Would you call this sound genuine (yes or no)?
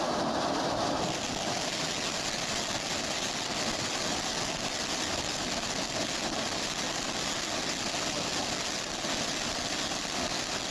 yes